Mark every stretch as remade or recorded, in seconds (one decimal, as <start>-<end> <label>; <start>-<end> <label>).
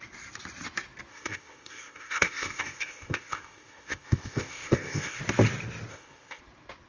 0.0-1.1 recorded; 1.1-5.2 remade; 5.2-5.9 recorded; 5.9-6.4 remade; 6.4-6.9 recorded